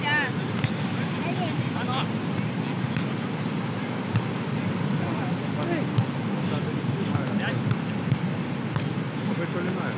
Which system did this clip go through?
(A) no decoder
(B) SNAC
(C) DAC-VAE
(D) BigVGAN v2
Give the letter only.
A